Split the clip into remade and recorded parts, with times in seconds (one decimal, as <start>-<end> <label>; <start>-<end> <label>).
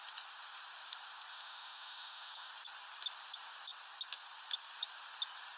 0.0-1.3 recorded; 1.3-2.5 remade; 2.5-5.6 recorded